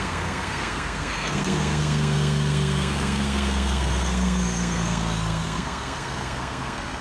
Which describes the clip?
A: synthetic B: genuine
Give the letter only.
A